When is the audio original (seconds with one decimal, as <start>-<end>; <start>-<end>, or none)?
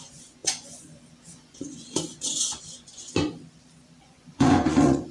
3.2-4.0